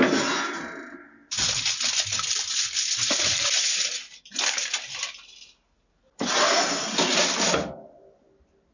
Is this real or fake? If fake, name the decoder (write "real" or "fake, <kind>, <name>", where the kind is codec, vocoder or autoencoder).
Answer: real